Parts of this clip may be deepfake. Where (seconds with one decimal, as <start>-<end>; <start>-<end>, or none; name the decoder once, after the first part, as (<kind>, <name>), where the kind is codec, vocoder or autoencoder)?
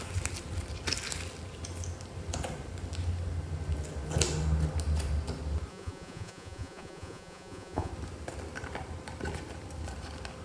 5.7-7.9 (vocoder, Vocos)